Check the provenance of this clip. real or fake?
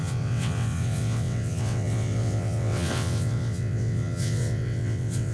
fake